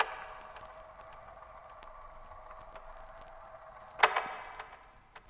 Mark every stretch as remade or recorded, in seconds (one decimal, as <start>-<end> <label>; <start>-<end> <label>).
0.0-5.3 recorded